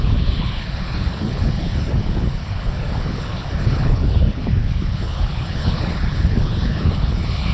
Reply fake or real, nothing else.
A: fake